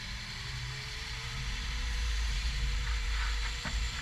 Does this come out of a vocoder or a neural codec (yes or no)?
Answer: yes